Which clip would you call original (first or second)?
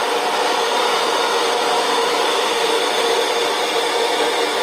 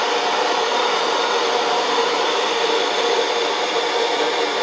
first